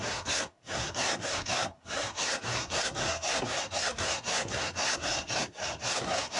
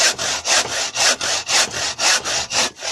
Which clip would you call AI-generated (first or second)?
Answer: first